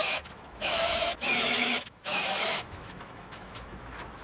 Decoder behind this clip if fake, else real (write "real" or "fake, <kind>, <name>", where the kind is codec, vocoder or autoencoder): fake, autoencoder, DAC-VAE